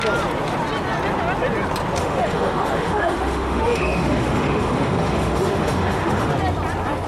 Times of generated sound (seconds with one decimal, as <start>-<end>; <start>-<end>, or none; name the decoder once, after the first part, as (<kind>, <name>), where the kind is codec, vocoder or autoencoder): 2.0-6.3 (autoencoder, DAC-VAE)